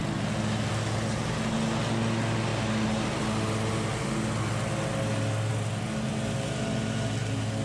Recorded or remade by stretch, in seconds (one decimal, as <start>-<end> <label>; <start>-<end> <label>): 0.0-7.6 recorded